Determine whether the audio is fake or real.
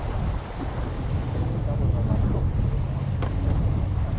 real